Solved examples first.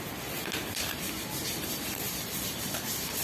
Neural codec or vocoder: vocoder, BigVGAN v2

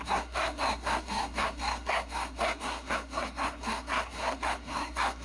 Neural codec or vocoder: codec, SNAC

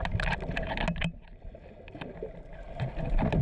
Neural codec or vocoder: none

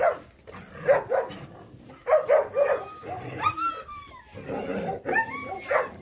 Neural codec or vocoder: none